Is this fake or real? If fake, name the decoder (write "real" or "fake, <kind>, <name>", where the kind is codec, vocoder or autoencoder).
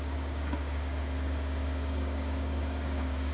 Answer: fake, codec, DAC